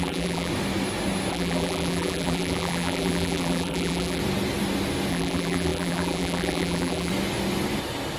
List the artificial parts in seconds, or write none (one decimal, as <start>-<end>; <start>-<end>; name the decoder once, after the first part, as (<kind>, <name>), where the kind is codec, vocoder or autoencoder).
0.0-0.5 (vocoder, BigVGAN v2); 1.3-4.2; 5.1-7.1